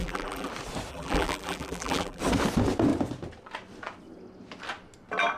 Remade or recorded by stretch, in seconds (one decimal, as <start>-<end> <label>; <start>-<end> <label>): 0.0-0.5 remade; 0.5-0.9 recorded; 0.9-2.2 remade; 2.2-5.4 recorded